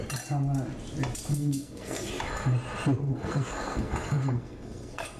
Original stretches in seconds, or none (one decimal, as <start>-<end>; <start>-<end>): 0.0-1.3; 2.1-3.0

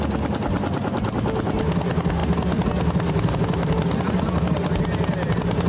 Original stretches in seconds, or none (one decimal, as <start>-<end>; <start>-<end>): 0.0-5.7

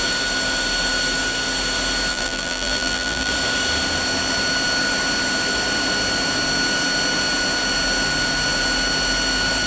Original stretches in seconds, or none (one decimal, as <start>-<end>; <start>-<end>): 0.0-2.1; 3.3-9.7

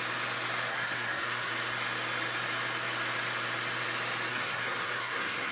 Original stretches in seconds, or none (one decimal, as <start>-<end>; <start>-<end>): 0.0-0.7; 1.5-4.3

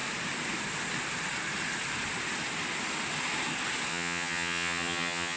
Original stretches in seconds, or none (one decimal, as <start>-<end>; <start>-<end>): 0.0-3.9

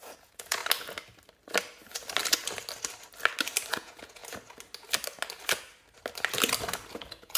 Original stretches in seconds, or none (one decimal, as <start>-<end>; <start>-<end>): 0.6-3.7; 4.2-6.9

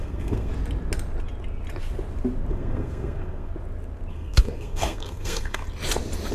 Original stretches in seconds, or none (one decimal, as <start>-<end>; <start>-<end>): 0.5-2.5; 3.5-4.1; 5.6-6.3

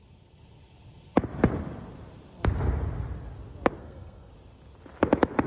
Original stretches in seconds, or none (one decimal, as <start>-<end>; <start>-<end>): 0.0-3.8; 4.3-5.5